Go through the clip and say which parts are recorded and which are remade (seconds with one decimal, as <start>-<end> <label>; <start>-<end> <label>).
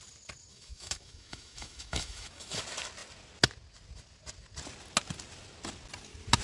0.0-0.5 recorded; 0.5-2.6 remade; 2.6-6.4 recorded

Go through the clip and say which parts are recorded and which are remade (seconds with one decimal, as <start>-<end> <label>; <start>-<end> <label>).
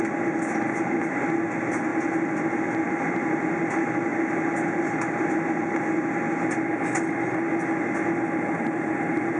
0.0-9.4 recorded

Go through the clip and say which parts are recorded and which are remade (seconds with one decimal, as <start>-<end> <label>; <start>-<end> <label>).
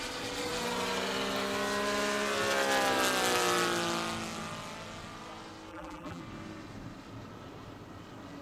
0.0-5.7 recorded; 5.7-6.2 remade; 6.2-8.4 recorded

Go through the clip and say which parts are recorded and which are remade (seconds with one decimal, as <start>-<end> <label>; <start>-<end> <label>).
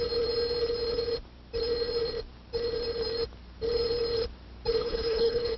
0.0-4.8 recorded; 4.8-5.6 remade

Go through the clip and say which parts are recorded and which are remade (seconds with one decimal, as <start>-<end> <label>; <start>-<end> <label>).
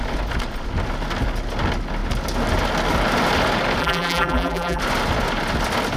0.0-3.8 recorded; 3.8-4.8 remade; 4.8-6.0 recorded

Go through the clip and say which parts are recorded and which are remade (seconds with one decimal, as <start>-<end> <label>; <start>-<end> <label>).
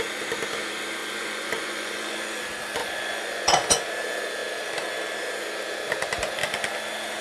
0.0-1.0 recorded; 1.0-2.4 remade; 2.4-2.8 recorded; 2.8-3.8 remade; 3.8-7.2 recorded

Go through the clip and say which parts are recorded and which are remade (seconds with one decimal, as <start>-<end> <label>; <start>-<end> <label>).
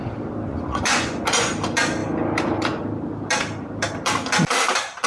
0.0-0.5 recorded; 0.5-1.5 remade; 1.5-5.1 recorded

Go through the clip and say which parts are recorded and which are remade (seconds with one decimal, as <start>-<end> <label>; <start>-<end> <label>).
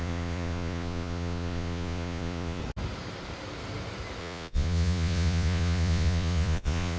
0.0-2.6 remade; 2.6-4.2 recorded; 4.2-7.0 remade